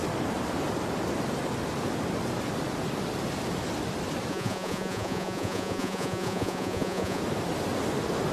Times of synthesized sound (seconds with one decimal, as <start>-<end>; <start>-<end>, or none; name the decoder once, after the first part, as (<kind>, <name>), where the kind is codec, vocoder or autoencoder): 4.3-7.2 (vocoder, Vocos)